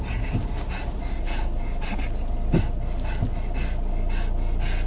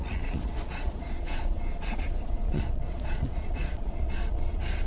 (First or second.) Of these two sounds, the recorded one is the first